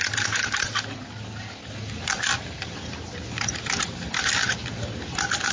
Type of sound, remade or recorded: recorded